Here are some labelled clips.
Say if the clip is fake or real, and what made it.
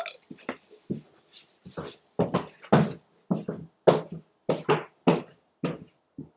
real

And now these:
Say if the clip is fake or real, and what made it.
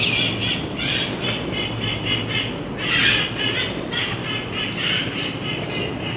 real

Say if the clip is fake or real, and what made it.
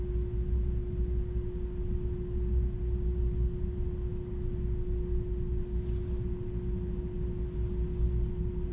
real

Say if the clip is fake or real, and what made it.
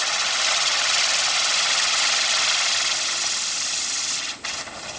real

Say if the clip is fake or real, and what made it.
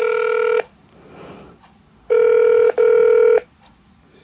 real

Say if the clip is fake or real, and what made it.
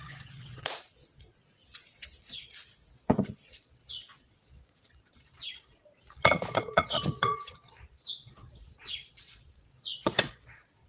fake, vocoder, Vocos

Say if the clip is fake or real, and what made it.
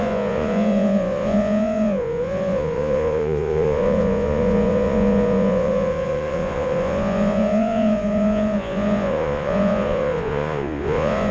fake, vocoder, Vocos